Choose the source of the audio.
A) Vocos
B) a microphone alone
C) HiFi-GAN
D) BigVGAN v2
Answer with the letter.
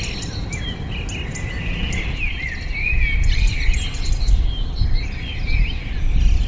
B